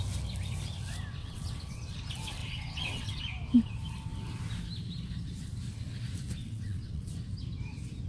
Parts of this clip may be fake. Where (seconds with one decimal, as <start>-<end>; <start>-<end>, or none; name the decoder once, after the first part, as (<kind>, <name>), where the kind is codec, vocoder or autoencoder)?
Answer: 1.2-1.8 (vocoder, WaveNeXt); 2.4-3.2; 6.4-7.1